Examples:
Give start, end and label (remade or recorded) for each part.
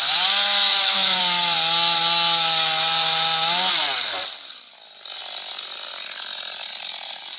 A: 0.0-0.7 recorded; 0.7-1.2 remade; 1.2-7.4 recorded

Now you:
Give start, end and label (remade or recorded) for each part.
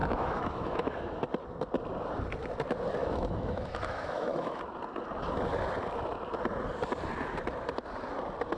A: 0.0-1.2 remade; 1.2-3.0 recorded; 3.0-4.6 remade; 4.6-8.6 recorded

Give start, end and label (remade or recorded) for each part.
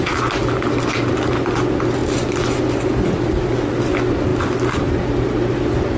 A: 0.0-6.0 recorded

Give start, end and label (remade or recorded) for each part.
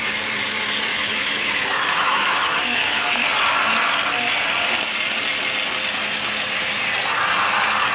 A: 0.0-0.9 recorded; 0.9-3.1 remade; 3.1-7.9 recorded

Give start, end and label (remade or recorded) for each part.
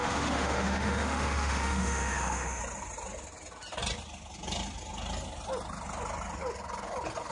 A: 0.0-2.6 remade; 2.6-7.3 recorded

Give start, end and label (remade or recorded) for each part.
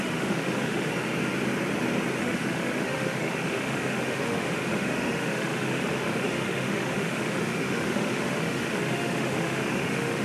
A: 0.0-0.9 remade; 0.9-2.2 recorded; 2.2-10.2 remade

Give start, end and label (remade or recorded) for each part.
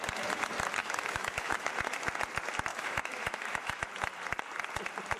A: 0.0-0.8 recorded; 0.8-1.7 remade; 1.7-2.7 recorded; 2.7-3.9 remade; 3.9-5.2 recorded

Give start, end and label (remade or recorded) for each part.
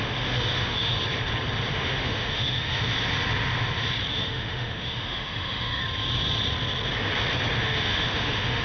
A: 0.0-0.9 remade; 0.9-1.7 recorded; 1.7-2.9 remade; 2.9-4.1 recorded; 4.1-5.8 remade; 5.8-7.6 recorded; 7.6-8.6 remade